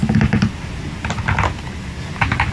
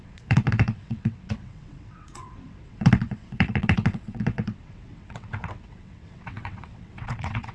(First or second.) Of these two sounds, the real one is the first